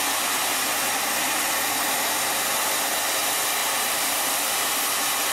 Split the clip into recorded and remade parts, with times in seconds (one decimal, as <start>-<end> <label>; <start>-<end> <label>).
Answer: 0.0-3.6 recorded; 3.6-4.7 remade; 4.7-5.3 recorded